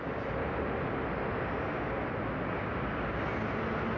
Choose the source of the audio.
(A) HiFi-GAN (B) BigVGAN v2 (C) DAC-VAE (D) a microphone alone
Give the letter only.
D